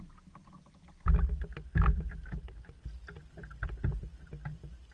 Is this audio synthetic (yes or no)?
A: no